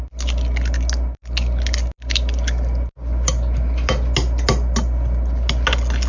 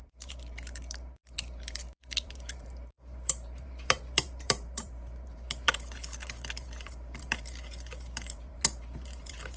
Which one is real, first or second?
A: first